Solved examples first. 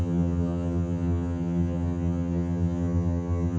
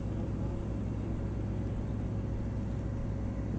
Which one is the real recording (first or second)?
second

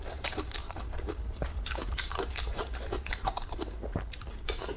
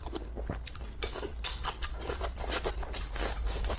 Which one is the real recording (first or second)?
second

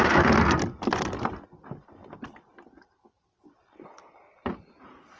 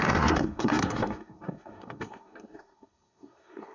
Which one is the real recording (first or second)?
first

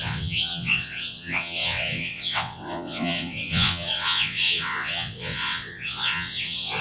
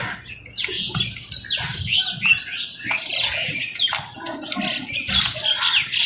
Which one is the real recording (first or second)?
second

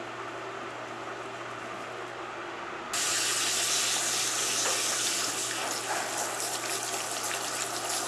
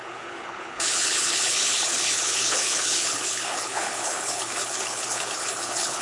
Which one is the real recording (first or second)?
first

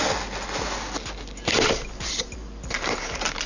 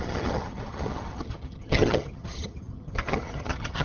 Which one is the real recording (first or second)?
first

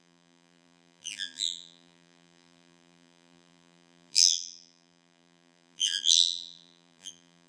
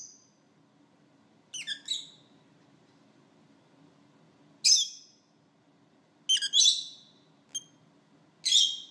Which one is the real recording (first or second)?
second